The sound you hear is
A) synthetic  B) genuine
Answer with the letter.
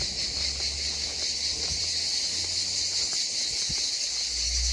B